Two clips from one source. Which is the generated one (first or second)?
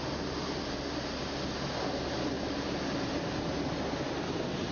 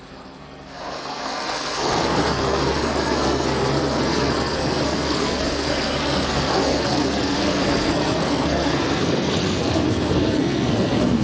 second